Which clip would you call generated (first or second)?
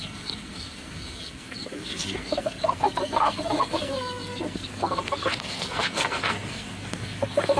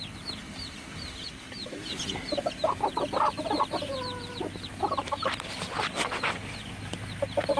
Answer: first